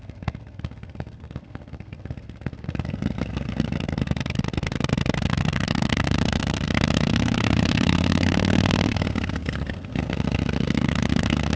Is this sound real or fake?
fake